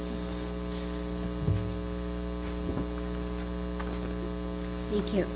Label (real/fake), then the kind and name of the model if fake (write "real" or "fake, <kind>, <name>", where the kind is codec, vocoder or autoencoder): real